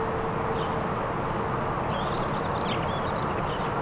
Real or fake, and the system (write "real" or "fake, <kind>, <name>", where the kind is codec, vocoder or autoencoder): real